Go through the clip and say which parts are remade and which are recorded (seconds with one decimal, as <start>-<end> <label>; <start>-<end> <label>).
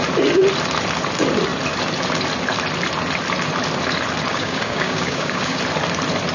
0.0-4.3 recorded; 4.3-5.6 remade; 5.6-6.3 recorded